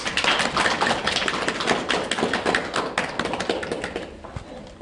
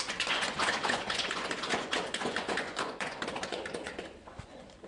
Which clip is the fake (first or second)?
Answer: second